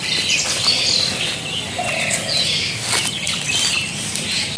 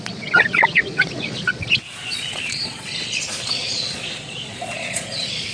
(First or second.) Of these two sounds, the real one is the first